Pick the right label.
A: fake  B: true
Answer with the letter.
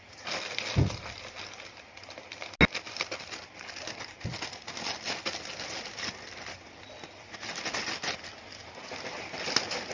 B